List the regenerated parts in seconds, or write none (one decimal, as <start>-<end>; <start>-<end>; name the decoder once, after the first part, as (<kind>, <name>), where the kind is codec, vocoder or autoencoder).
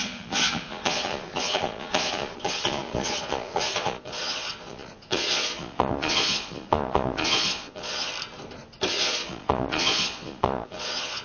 0.0-8.1 (vocoder, Vocos); 8.9-11.2